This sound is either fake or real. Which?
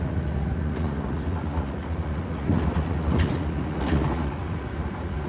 fake